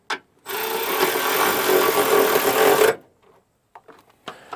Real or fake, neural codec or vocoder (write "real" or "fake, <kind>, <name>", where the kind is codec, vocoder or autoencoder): real